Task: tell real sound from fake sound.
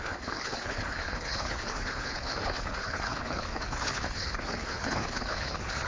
fake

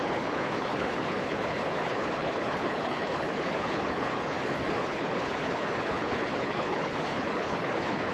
fake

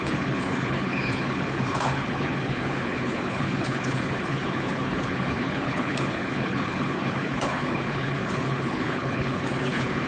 fake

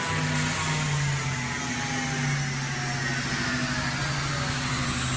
real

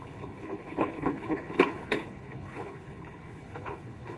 fake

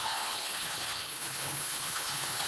fake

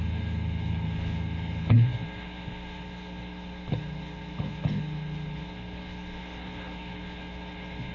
fake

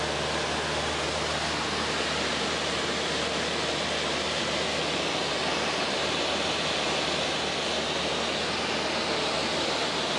real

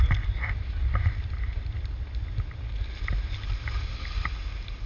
real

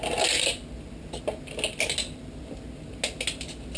real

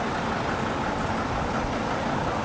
real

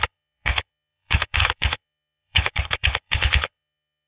fake